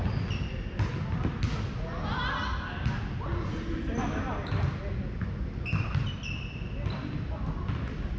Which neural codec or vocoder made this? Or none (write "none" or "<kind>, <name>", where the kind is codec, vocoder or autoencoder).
none